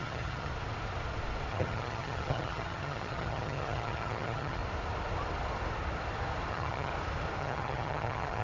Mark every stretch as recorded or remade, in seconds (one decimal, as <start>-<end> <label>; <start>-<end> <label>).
0.0-0.5 remade; 0.5-1.5 recorded; 1.5-4.6 remade; 4.6-6.5 recorded; 6.5-6.9 remade; 6.9-7.4 recorded; 7.4-8.4 remade